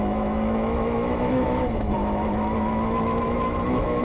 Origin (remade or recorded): remade